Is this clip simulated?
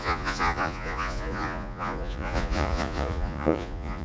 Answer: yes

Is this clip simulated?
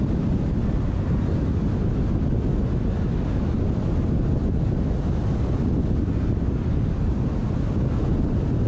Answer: no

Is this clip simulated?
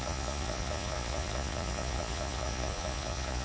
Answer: yes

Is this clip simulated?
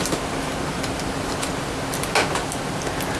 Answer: no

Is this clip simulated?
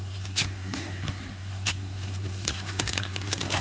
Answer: yes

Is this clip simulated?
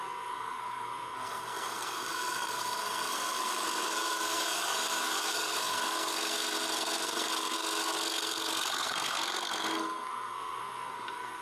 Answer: yes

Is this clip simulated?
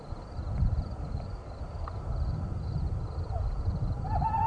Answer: yes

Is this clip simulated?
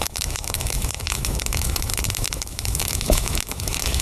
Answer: yes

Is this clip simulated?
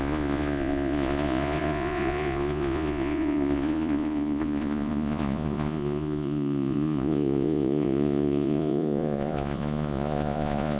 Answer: yes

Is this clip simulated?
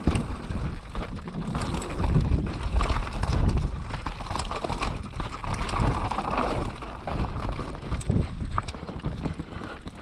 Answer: no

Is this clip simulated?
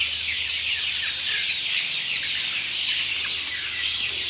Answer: no